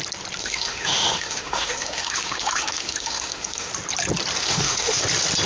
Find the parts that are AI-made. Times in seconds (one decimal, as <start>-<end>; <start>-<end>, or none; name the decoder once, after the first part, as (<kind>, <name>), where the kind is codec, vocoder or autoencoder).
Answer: 0.4-3.7 (autoencoder, DAC-VAE); 4.4-5.0